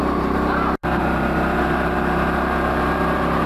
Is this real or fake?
fake